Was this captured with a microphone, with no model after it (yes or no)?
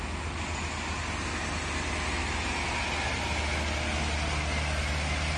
yes